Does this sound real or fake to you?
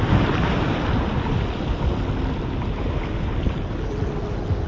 real